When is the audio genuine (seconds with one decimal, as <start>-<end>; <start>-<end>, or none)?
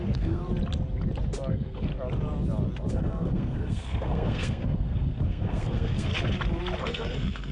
0.4-1.5; 1.9-2.9; 6.1-6.8